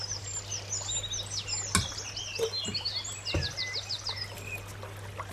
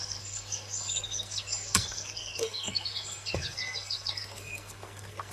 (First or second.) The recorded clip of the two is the first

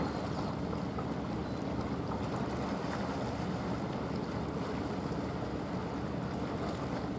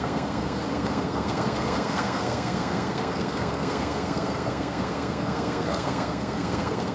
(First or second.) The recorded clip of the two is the first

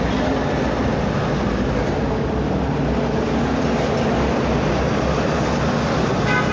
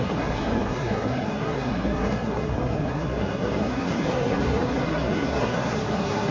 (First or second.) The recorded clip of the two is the first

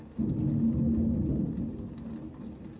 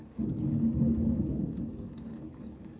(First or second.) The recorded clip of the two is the first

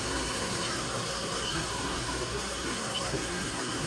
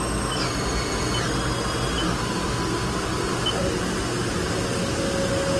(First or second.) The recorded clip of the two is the second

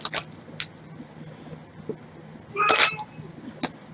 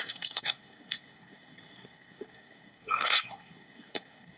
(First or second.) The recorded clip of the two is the first